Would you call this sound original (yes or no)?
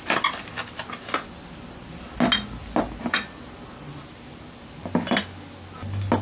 yes